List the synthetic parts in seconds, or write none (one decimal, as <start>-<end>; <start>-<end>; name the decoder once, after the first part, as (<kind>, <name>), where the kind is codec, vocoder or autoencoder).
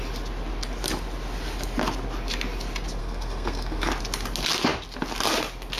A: 3.0-3.9 (codec, SNAC)